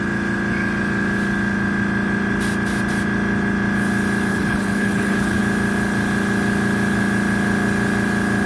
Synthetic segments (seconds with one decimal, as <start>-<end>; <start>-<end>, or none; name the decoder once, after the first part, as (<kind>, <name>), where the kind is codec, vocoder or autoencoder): 4.3-5.4 (codec, HILCodec)